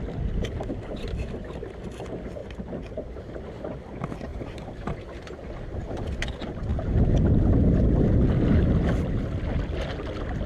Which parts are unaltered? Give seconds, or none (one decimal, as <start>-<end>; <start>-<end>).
0.0-2.4; 3.2-4.3; 5.0-10.5